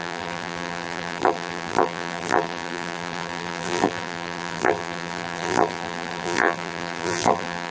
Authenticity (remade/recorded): remade